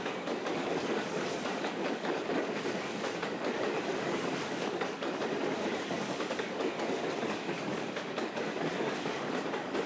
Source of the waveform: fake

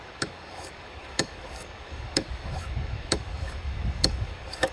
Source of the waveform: fake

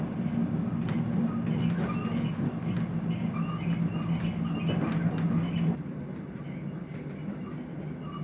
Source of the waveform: real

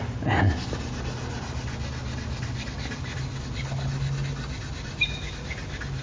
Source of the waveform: real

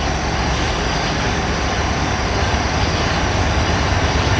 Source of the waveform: real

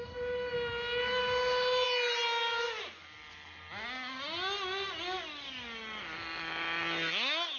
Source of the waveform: real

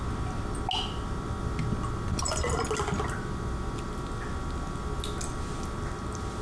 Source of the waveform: real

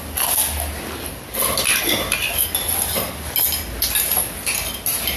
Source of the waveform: real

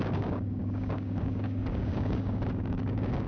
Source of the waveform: fake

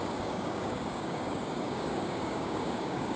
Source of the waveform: fake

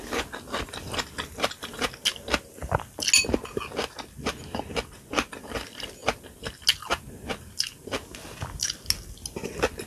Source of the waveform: real